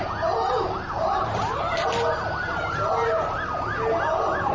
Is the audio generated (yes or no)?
no